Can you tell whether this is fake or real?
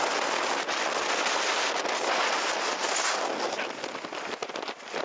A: real